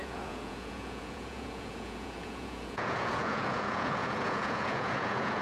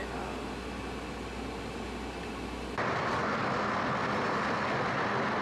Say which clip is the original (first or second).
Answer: second